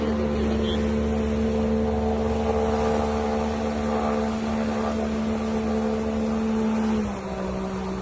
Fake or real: real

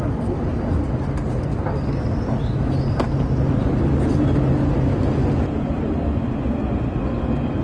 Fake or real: real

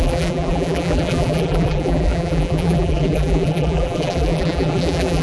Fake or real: fake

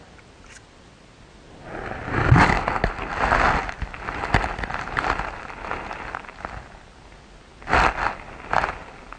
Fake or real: real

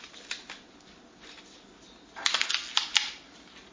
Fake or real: real